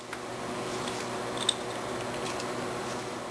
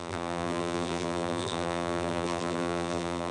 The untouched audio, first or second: first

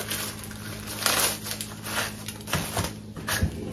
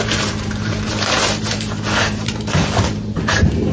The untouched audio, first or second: first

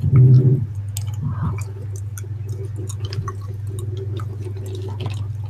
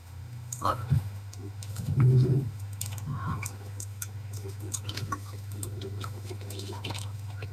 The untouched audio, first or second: first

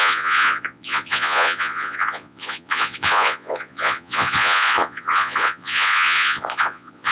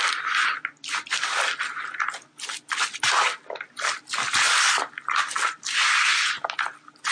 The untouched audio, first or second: second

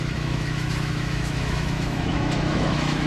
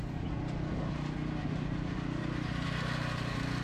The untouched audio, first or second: second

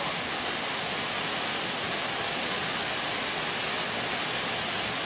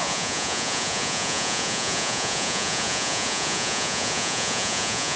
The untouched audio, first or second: first